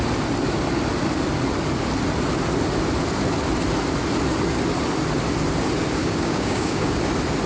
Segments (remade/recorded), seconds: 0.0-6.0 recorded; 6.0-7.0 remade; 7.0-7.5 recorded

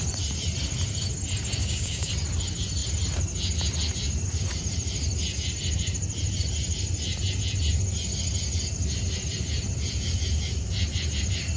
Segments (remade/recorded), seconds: 0.0-1.6 recorded; 1.6-2.1 remade; 2.1-11.6 recorded

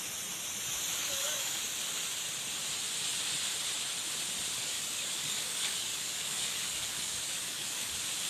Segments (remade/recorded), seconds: 0.0-1.0 recorded; 1.0-1.6 remade; 1.6-4.6 recorded; 4.6-7.9 remade; 7.9-8.3 recorded

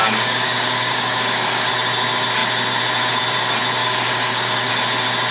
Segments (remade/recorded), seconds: 0.0-1.7 remade; 1.7-3.8 recorded; 3.8-4.7 remade; 4.7-5.3 recorded